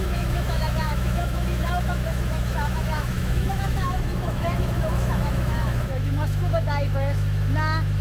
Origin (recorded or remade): remade